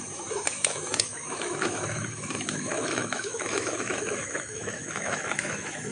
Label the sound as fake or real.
fake